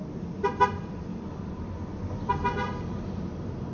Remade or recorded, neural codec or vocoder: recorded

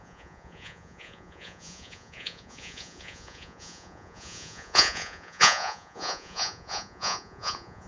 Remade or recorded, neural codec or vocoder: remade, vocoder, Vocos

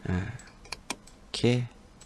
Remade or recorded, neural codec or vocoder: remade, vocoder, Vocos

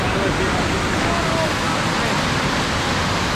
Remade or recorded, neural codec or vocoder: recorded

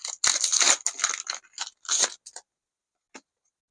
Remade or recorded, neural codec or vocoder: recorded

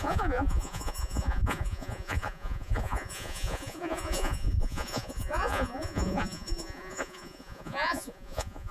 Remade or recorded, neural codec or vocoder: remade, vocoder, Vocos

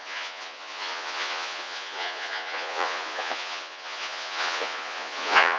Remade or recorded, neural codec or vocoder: remade, vocoder, Vocos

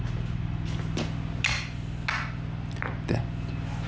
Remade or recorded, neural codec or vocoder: recorded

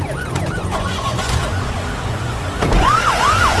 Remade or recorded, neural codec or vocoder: remade, vocoder, Vocos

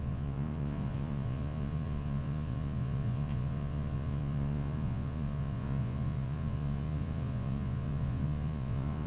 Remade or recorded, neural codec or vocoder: remade, vocoder, Vocos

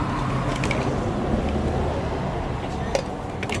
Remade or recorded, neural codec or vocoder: recorded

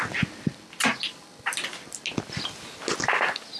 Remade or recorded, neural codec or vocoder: recorded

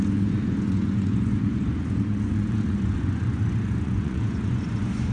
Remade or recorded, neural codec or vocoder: remade, vocoder, Vocos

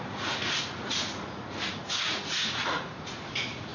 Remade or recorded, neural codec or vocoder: remade, vocoder, Vocos